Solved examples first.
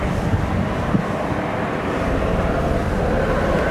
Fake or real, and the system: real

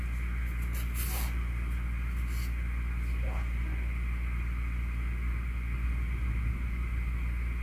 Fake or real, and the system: real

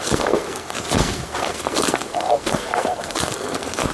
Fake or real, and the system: fake, codec, SNAC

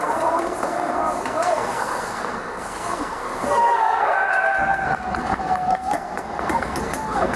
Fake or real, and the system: fake, codec, SNAC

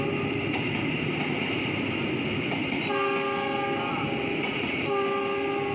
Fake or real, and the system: real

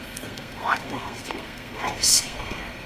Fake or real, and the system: fake, codec, SNAC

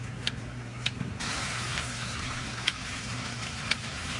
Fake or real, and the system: fake, codec, SNAC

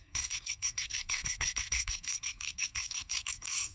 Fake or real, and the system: fake, codec, SNAC